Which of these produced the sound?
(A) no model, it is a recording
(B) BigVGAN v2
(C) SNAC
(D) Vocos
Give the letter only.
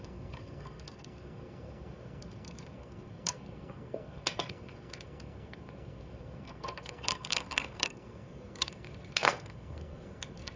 C